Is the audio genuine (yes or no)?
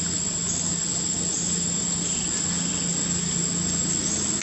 yes